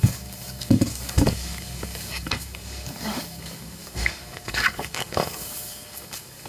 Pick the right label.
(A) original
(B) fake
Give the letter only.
B